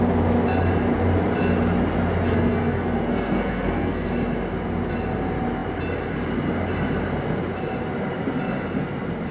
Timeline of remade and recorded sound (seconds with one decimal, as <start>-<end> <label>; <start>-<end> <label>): 0.0-2.3 recorded; 2.3-4.1 remade; 4.1-9.3 recorded